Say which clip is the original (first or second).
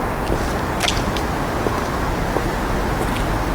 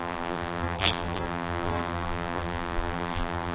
first